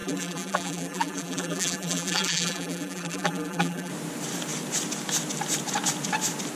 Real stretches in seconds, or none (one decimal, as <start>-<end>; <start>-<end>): 3.9-6.6